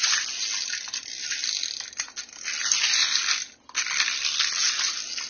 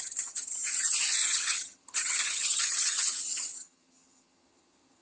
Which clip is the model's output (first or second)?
second